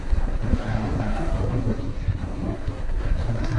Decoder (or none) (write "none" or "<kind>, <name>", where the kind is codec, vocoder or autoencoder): codec, SNAC